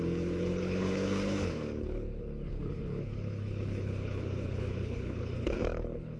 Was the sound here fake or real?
fake